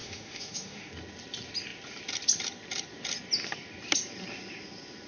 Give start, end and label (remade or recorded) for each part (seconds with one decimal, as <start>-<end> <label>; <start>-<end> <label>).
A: 0.0-0.9 remade; 0.9-5.1 recorded